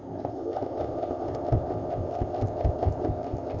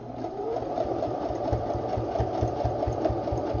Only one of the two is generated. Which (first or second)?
first